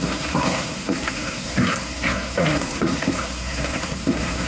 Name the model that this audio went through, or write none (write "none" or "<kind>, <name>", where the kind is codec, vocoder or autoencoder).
codec, SNAC